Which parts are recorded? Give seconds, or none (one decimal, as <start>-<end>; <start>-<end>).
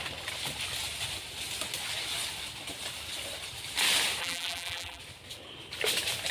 0.0-4.2; 5.0-6.3